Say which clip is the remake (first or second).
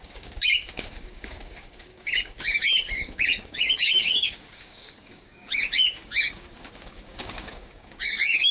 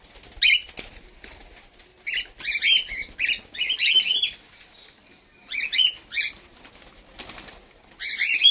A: first